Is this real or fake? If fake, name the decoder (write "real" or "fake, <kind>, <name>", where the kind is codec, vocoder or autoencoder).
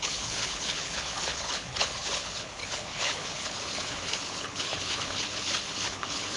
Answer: fake, codec, HILCodec